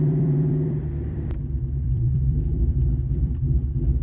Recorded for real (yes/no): no